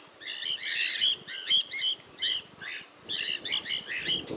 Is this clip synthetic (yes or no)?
no